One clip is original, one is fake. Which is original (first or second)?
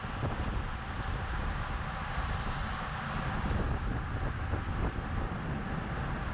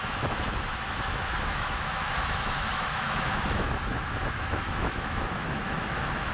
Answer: first